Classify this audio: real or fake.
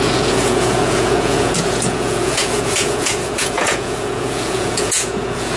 fake